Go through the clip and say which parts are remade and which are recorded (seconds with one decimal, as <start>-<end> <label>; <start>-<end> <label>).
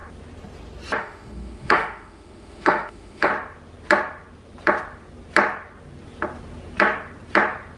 0.0-1.0 recorded; 1.0-3.3 remade; 3.3-7.8 recorded